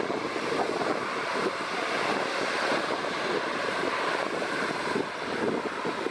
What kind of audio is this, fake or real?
real